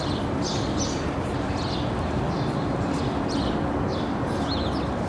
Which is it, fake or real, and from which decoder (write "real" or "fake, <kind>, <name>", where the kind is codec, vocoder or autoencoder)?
real